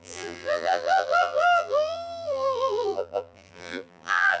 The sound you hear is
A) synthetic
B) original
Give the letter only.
A